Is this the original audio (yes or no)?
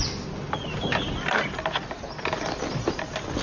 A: yes